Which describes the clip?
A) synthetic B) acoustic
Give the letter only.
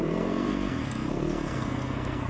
A